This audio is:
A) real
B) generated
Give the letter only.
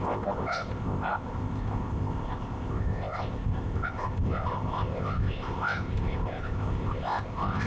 B